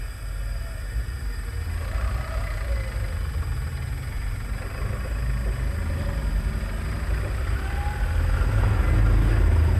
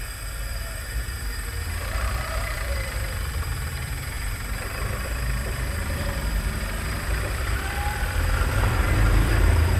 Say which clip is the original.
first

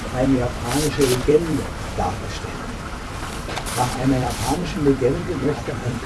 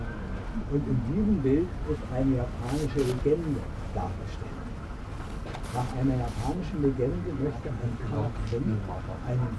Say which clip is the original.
second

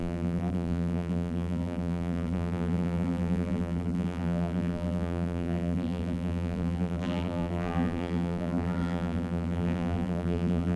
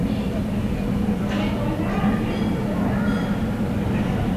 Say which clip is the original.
second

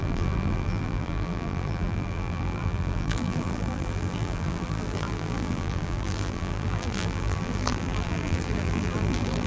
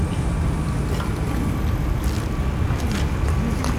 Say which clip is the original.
second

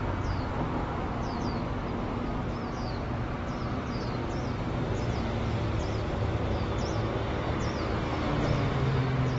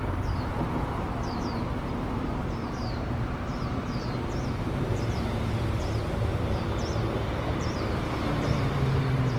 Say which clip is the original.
first